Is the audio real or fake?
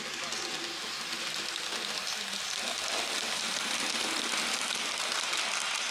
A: real